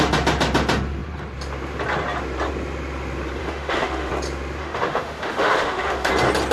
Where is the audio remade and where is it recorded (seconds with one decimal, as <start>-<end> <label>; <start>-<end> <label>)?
0.0-3.4 recorded; 3.4-4.1 remade; 4.1-4.6 recorded; 4.6-6.1 remade; 6.1-6.5 recorded